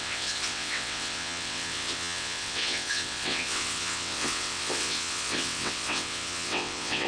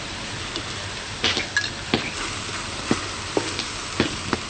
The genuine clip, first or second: second